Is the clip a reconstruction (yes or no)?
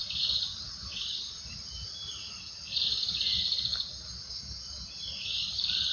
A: no